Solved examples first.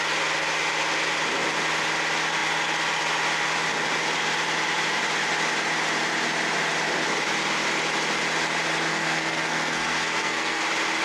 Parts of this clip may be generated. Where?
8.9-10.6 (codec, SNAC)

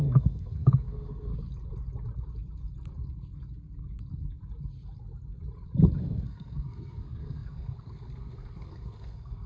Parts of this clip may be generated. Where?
0.0-1.3 (codec, SNAC); 6.0-9.5

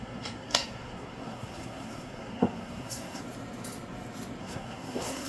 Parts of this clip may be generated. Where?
0.0-3.2 (codec, SNAC); 4.4-5.3

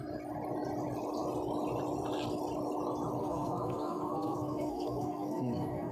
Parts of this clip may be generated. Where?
3.2-5.9 (codec, SNAC)

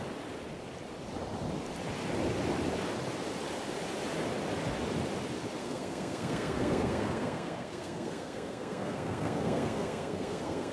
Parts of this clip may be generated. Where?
5.6-10.7 (codec, SNAC)

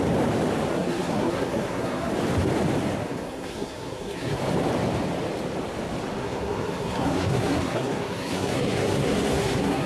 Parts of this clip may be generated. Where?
0.7-2.1 (codec, SNAC); 3.0-4.4; 6.2-9.9